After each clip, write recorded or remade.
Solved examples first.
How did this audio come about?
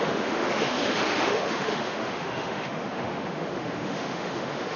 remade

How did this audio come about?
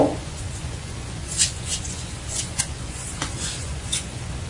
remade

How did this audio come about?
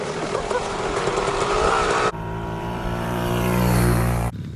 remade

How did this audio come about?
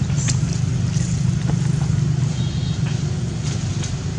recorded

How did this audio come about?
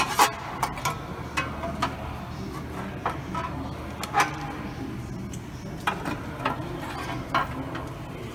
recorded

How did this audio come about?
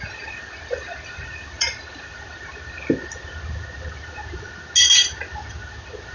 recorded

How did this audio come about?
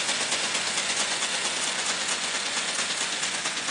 remade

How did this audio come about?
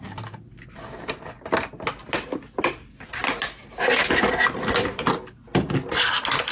recorded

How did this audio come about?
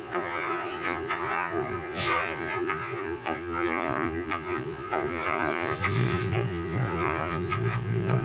remade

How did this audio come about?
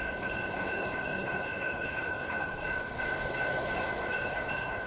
remade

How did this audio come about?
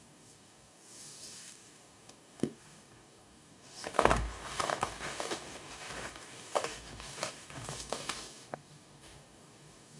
remade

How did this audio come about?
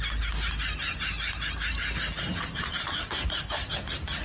recorded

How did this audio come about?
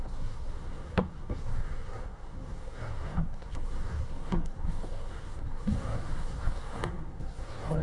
remade